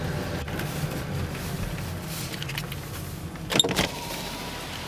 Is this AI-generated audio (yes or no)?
no